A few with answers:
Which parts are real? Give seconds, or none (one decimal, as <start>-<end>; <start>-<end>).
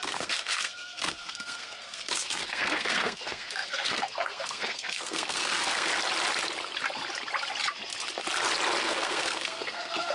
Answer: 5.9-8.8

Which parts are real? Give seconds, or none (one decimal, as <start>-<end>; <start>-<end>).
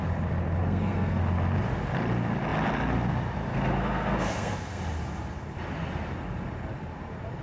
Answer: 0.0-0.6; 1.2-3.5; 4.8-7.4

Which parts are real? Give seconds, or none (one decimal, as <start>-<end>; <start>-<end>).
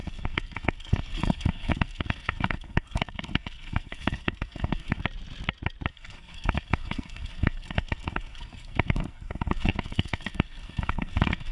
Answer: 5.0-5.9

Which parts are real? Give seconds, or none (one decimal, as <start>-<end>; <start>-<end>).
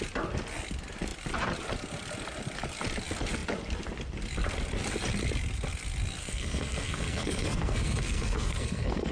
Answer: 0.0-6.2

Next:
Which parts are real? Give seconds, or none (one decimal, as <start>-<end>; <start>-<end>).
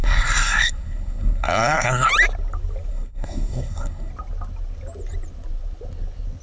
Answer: 2.1-2.9; 4.1-6.4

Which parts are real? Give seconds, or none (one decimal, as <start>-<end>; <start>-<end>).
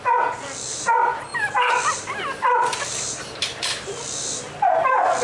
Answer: 0.0-5.2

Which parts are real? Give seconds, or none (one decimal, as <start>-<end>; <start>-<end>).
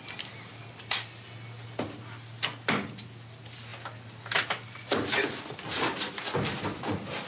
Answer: 0.0-7.3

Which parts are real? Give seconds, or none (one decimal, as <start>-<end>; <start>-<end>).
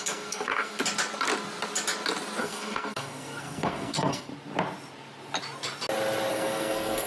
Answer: 0.8-2.4; 4.3-6.3